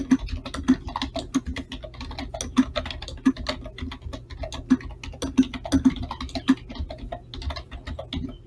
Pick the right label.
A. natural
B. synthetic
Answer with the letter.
A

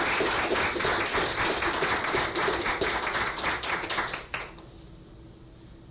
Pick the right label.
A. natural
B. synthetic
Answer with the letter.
A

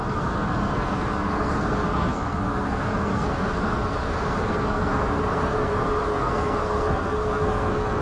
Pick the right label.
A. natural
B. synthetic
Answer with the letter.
B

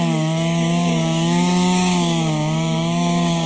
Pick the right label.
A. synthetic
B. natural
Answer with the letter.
A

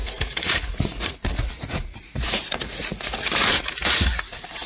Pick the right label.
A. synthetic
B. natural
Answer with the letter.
A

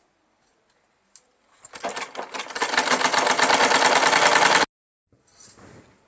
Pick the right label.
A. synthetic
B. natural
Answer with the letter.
B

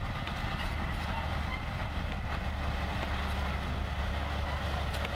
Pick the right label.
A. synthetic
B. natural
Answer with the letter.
B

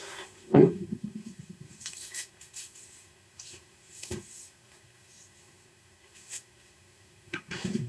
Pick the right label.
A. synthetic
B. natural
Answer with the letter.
A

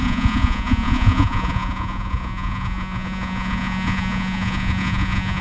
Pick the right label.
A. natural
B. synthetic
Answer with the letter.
B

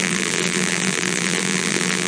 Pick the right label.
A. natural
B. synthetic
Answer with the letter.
B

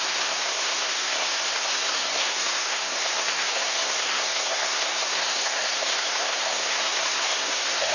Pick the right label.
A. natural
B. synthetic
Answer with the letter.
B